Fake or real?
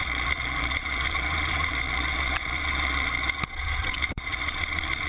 fake